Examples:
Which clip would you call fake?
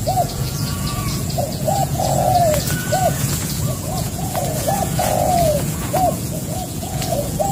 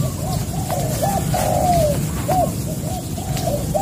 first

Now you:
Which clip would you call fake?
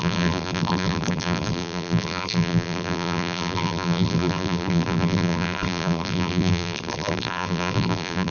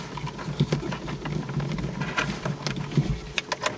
first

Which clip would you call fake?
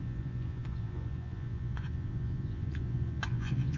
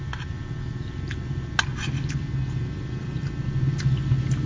first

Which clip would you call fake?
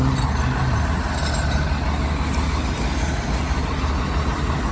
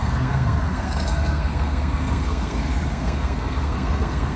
second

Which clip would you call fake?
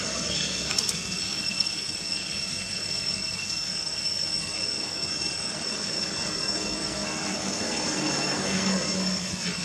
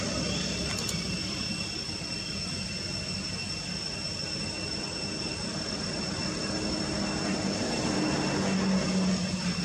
first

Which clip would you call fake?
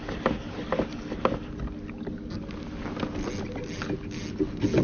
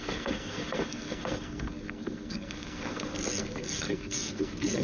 second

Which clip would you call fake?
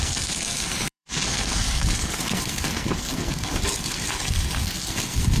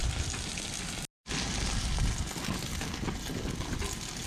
first